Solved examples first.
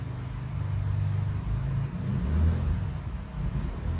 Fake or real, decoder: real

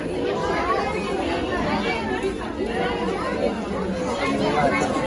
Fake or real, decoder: real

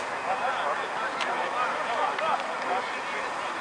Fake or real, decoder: real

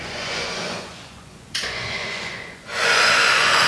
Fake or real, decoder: fake, vocoder, Vocos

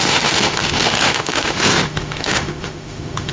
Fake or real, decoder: fake, autoencoder, DAC-VAE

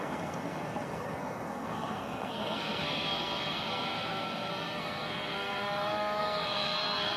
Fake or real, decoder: fake, codec, SNAC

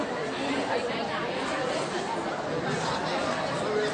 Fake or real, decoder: real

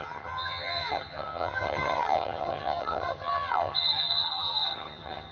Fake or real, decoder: fake, vocoder, HiFi-GAN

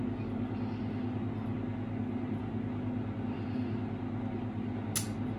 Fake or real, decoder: real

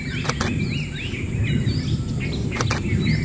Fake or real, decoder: real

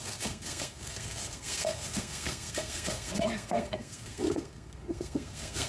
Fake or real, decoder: fake, codec, SNAC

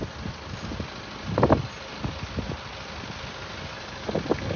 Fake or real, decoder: real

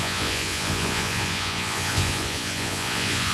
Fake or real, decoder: fake, vocoder, Vocos